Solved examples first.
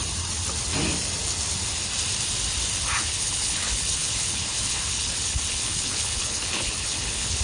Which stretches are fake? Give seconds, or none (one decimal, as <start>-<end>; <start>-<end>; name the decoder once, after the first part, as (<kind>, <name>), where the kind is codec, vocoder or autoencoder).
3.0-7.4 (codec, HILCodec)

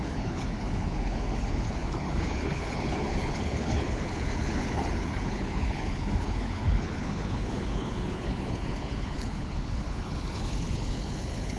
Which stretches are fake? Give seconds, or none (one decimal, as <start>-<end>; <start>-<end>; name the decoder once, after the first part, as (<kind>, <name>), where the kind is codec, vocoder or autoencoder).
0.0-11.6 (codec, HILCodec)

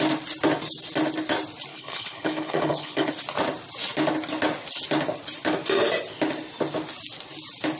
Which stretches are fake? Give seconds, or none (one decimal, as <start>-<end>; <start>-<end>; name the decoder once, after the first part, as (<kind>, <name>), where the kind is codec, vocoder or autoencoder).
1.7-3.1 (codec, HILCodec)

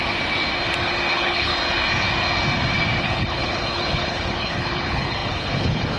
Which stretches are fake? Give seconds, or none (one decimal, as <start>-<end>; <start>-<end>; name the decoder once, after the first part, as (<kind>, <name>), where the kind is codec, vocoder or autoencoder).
1.1-1.5 (codec, HILCodec); 3.0-6.0

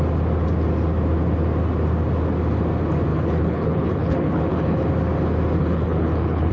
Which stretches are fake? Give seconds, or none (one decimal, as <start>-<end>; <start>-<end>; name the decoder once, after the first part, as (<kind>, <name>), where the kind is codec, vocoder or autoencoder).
3.1-4.9 (codec, HILCodec); 5.6-6.5